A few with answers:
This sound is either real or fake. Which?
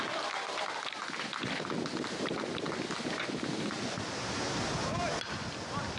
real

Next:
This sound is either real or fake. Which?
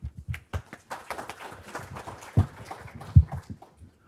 real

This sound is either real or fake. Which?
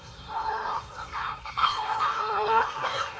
fake